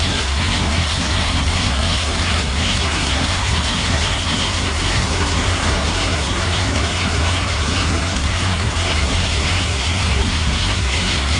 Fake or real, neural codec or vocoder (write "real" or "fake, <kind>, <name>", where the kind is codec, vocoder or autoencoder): fake, codec, SNAC